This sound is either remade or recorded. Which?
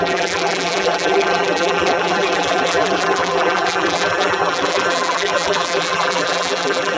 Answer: remade